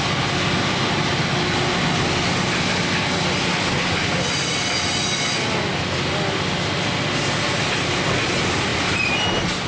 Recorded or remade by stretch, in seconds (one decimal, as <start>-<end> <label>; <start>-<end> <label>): 0.0-9.7 recorded